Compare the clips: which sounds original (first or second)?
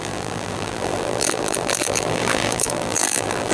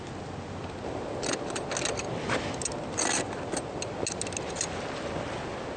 second